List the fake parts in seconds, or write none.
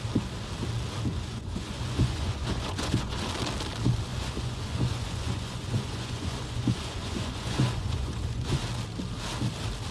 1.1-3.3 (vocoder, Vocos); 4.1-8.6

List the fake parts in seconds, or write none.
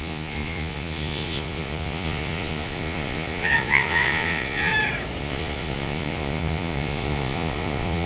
0.0-4.7 (vocoder, Vocos); 5.2-8.1